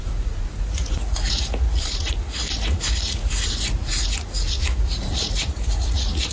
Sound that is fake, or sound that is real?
fake